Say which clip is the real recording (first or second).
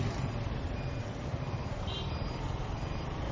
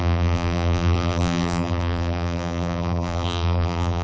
first